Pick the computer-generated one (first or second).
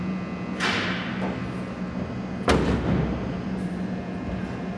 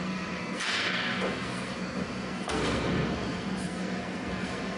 second